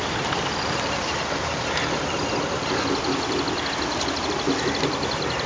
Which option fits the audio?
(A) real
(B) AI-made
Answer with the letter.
A